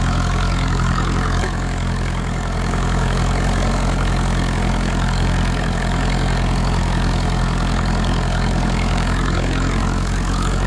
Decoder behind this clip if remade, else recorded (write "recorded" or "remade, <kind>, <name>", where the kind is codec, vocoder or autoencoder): remade, codec, DAC